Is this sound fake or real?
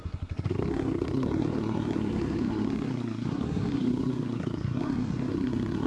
fake